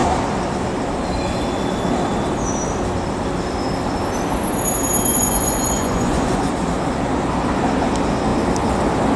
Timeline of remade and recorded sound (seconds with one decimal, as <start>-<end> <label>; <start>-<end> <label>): 0.0-5.1 recorded; 5.1-6.5 remade; 6.5-9.2 recorded